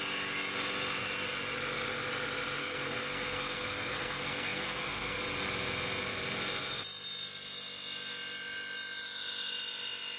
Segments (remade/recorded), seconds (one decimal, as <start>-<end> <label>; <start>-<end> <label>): 0.0-2.6 recorded; 2.6-5.2 remade; 5.2-10.2 recorded